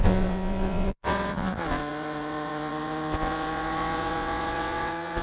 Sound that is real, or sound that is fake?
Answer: fake